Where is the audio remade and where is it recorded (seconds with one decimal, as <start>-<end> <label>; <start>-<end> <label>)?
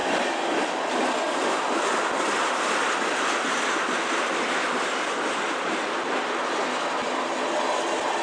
0.0-0.6 remade; 0.6-1.4 recorded; 1.4-4.2 remade; 4.2-8.2 recorded